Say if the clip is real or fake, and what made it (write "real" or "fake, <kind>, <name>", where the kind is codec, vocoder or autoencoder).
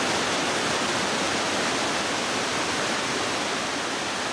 real